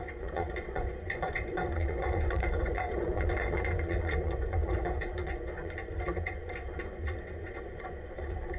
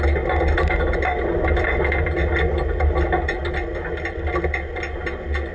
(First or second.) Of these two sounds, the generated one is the first